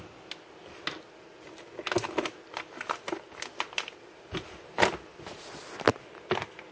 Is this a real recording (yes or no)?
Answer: yes